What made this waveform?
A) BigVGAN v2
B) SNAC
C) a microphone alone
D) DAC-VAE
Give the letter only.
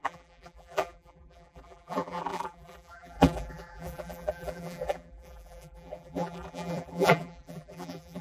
A